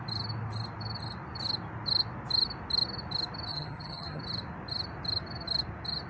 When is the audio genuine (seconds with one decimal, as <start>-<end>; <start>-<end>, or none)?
0.0-3.5; 4.2-6.1